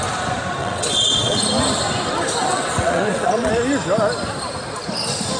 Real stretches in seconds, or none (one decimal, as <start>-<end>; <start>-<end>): 0.0-0.6; 1.4-2.5; 3.5-5.4